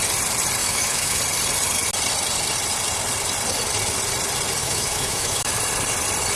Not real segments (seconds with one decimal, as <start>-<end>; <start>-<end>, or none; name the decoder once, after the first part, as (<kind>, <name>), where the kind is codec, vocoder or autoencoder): 0.6-1.2 (autoencoder, DAC-VAE); 4.6-5.5